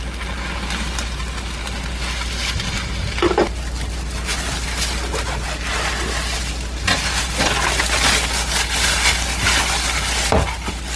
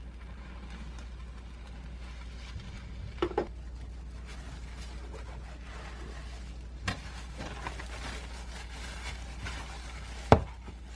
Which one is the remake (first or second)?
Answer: first